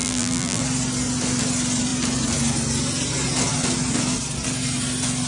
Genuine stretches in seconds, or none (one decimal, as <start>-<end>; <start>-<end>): 0.6-5.3